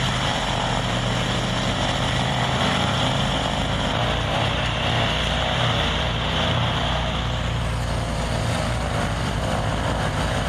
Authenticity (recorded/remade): remade